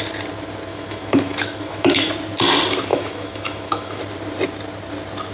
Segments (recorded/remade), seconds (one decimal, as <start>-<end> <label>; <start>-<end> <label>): 0.0-0.7 recorded; 0.7-2.1 remade; 2.1-2.9 recorded; 2.9-4.0 remade; 4.0-5.3 recorded